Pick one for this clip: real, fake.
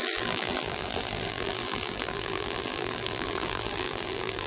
fake